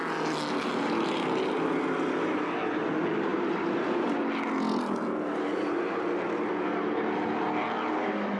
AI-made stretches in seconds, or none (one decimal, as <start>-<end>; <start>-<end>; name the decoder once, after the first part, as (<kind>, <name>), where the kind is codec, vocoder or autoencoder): none